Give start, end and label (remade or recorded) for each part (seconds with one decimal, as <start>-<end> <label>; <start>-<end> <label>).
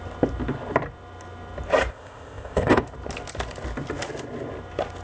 0.0-1.9 recorded; 1.9-2.8 remade; 2.8-5.0 recorded